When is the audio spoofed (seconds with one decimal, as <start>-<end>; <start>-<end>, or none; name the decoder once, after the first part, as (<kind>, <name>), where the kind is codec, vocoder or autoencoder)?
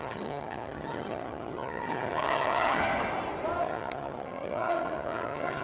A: 0.0-2.8 (vocoder, HiFi-GAN); 3.6-5.6